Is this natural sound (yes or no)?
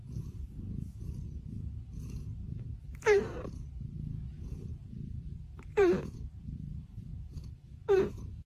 no